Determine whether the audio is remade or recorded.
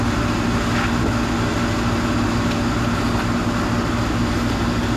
recorded